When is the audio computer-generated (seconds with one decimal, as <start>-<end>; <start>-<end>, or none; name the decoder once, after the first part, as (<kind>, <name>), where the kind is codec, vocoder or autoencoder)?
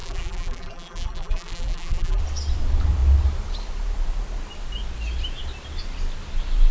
0.0-2.2 (vocoder, BigVGAN v2)